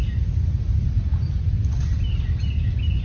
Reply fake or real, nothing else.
real